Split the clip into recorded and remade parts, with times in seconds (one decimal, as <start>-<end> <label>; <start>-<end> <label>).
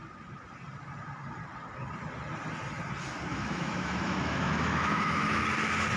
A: 0.0-3.3 recorded; 3.3-5.4 remade; 5.4-6.0 recorded